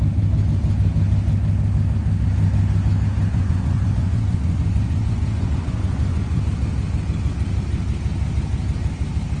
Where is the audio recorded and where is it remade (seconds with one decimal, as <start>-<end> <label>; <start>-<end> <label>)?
0.0-3.3 recorded; 3.3-6.4 remade; 6.4-9.4 recorded